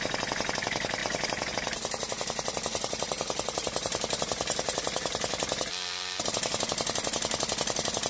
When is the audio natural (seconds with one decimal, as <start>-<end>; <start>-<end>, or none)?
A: 0.0-8.1